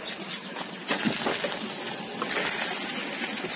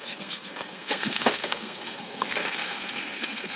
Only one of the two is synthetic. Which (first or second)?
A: second